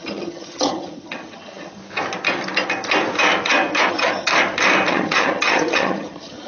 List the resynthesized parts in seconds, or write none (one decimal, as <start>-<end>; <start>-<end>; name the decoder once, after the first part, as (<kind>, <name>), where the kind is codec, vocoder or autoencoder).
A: 0.0-1.8 (vocoder, HiFi-GAN); 3.9-4.3; 4.9-6.5